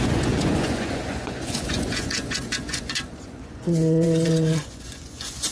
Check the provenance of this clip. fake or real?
fake